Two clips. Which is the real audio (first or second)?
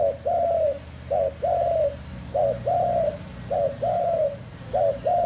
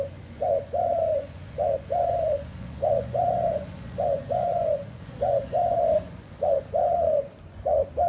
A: first